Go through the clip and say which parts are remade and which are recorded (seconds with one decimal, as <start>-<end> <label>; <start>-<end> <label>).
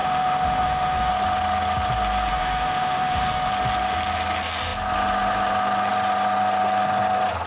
0.0-1.1 remade; 1.1-2.3 recorded; 2.3-3.5 remade; 3.5-7.5 recorded